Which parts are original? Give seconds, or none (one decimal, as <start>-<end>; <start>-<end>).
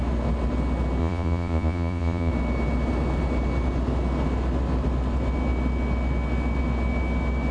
0.0-1.0; 2.3-7.5